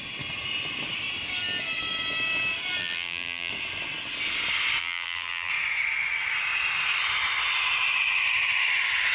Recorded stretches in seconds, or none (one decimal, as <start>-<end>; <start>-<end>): 0.0-2.8; 3.5-4.8; 5.5-9.1